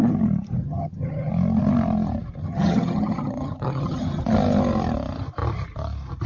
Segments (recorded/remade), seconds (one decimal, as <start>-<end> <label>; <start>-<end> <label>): 0.0-0.6 recorded; 0.6-1.3 remade; 1.3-2.4 recorded; 2.4-4.2 remade; 4.2-6.3 recorded